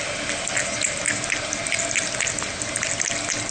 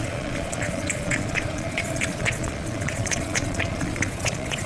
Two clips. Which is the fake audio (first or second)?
second